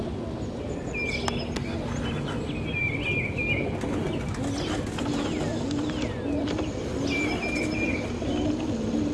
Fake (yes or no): no